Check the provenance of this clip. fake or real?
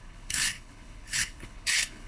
fake